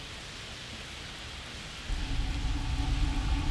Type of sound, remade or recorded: recorded